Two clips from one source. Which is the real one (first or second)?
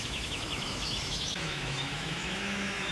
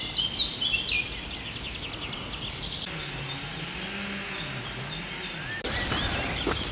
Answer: second